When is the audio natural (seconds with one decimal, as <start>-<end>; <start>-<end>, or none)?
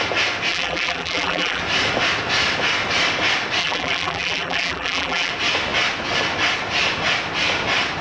0.0-0.5; 1.6-3.6; 5.3-8.0